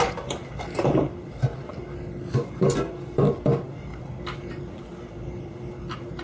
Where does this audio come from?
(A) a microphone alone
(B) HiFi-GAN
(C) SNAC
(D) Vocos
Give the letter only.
A